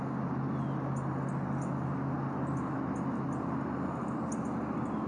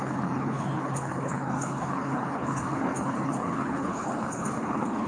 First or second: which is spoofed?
second